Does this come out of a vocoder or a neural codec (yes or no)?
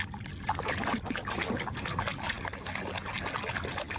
no